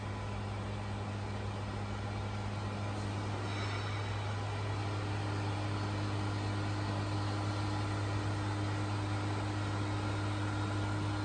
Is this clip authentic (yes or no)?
yes